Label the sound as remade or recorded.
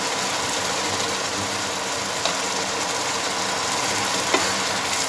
recorded